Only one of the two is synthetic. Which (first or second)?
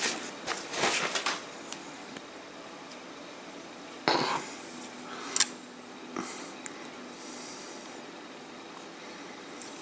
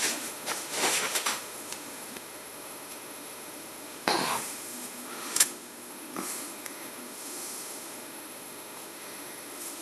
second